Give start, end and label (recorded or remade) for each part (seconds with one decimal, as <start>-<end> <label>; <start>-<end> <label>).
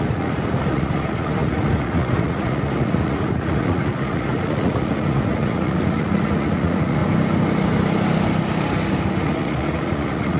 0.0-7.0 remade; 7.0-9.2 recorded; 9.2-10.4 remade